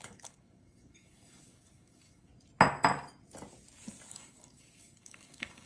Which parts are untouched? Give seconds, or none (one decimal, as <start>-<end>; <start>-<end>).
2.3-4.1